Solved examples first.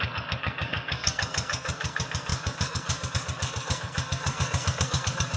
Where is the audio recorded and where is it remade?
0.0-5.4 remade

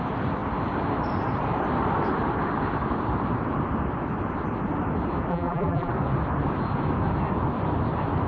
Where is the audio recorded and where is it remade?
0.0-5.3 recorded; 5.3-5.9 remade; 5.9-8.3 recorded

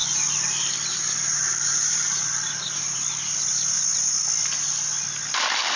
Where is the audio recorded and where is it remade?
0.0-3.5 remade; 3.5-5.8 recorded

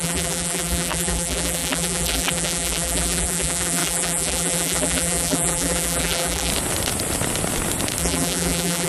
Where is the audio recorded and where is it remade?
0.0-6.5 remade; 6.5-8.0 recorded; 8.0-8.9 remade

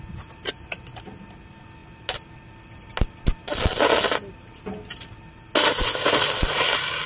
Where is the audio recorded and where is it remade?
0.0-7.1 recorded